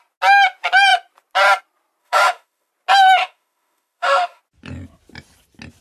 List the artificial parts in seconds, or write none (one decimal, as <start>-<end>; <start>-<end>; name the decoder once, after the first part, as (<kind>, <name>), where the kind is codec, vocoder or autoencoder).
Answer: 2.0-2.7 (autoencoder, DAC-VAE); 3.2-4.4